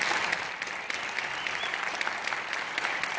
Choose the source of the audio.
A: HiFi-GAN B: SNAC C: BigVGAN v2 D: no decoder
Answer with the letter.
D